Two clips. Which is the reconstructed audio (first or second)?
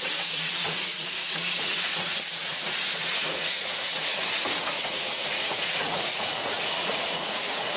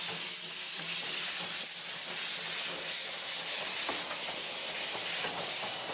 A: first